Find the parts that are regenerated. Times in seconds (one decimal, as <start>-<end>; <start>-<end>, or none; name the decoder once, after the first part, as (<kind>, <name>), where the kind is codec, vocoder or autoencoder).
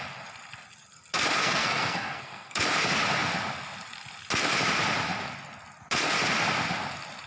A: 1.4-2.6 (codec, SNAC)